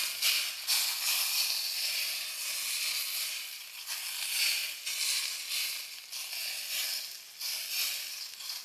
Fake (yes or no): no